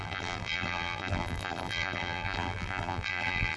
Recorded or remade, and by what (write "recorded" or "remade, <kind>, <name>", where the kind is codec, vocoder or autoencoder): remade, vocoder, BigVGAN v2